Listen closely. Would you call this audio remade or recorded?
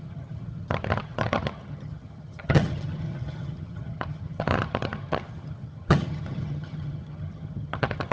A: remade